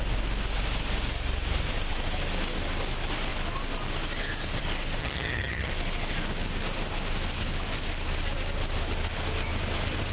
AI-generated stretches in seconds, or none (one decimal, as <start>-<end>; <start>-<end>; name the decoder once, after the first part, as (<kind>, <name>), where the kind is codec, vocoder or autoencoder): 5.0-5.7 (vocoder, HiFi-GAN)